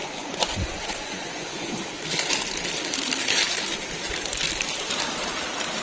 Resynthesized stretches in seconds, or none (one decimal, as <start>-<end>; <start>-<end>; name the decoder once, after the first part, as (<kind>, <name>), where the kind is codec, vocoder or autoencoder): 0.0-1.7 (vocoder, Vocos)